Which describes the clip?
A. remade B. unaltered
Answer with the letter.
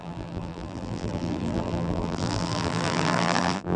A